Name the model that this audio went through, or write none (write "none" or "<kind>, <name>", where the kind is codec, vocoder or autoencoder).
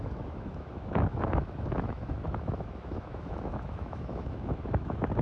autoencoder, DAC-VAE